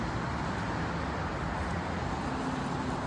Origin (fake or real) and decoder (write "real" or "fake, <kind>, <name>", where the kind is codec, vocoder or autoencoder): real